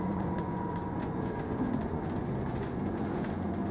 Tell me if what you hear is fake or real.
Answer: fake